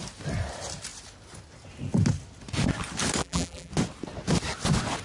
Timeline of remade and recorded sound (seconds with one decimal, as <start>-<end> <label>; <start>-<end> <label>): 0.0-3.2 recorded; 3.2-3.7 remade; 3.7-5.0 recorded